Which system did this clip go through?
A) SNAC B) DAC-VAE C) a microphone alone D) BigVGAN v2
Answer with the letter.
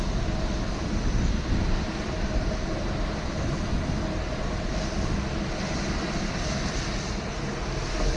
C